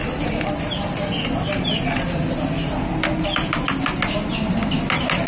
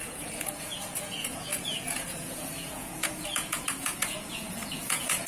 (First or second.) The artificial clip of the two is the second